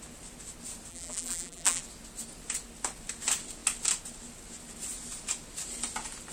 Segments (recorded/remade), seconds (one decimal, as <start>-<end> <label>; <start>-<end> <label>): 0.0-0.9 recorded; 0.9-1.8 remade; 1.8-6.3 recorded